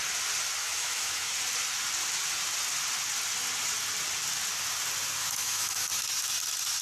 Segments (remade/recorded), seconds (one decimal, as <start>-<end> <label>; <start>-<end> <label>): 0.0-0.6 recorded; 0.6-1.3 remade; 1.3-5.2 recorded; 5.2-5.9 remade; 5.9-6.8 recorded